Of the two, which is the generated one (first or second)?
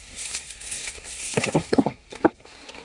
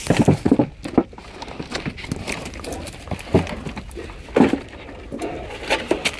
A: first